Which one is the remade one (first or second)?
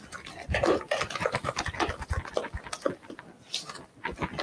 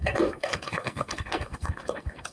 second